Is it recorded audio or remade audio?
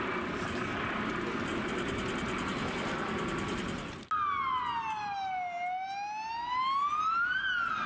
recorded